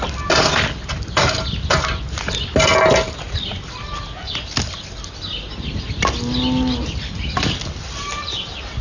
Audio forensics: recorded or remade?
recorded